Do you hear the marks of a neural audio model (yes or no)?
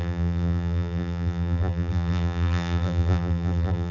yes